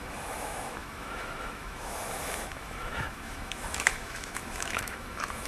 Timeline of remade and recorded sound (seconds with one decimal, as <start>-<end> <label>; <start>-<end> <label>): 0.0-5.5 remade